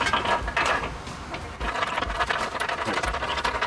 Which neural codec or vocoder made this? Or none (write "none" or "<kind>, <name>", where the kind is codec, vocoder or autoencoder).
none